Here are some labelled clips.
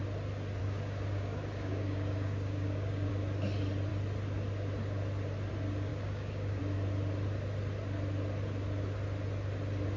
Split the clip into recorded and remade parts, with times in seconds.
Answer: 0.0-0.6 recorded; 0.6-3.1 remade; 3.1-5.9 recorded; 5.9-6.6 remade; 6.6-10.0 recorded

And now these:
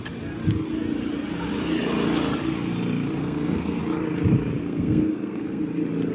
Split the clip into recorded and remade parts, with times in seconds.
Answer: 0.0-3.2 recorded; 3.2-3.8 remade; 3.8-4.6 recorded; 4.6-5.6 remade; 5.6-6.1 recorded

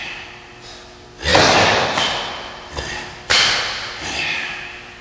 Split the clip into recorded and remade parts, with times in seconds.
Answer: 0.0-5.0 recorded

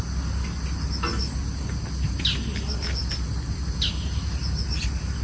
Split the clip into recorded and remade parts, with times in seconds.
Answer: 0.0-5.2 recorded

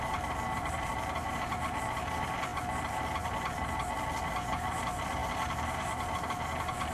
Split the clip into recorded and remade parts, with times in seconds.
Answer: 0.0-0.9 recorded; 0.9-1.5 remade; 1.5-6.9 recorded